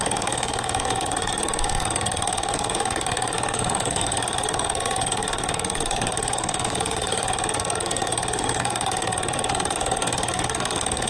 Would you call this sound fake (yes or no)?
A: yes